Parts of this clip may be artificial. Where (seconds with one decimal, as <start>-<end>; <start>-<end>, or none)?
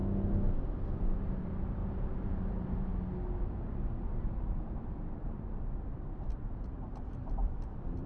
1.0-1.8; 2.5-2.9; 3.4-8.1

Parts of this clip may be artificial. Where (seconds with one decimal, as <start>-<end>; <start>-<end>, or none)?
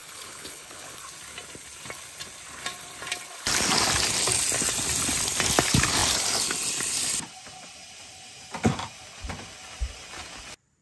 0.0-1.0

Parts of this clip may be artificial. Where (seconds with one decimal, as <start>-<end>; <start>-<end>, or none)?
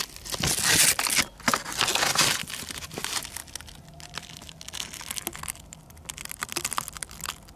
none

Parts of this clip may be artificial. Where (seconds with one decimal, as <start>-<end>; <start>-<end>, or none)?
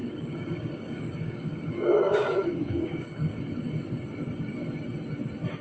0.0-3.4